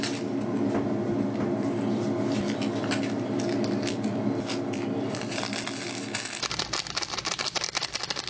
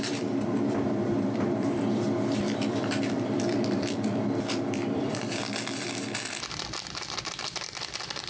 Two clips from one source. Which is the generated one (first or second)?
second